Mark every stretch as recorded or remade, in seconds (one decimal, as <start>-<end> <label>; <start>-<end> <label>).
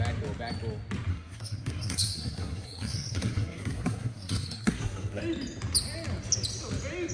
0.0-1.1 recorded; 1.1-5.2 remade; 5.2-7.1 recorded